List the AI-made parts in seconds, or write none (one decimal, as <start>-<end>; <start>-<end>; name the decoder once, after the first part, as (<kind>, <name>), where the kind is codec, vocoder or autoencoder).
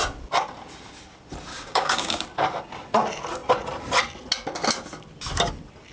1.5-2.2 (codec, DAC)